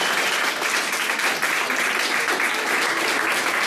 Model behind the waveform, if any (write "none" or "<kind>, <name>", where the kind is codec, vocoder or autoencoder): none